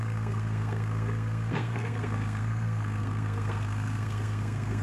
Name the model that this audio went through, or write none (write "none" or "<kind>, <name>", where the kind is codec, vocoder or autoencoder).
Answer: codec, SNAC